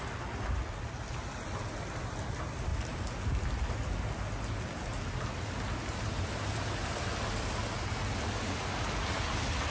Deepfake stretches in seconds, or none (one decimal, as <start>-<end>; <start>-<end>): none